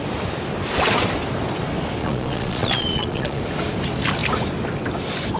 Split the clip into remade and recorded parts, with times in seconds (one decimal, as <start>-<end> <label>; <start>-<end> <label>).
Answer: 0.0-2.0 recorded; 2.0-3.4 remade; 3.4-5.4 recorded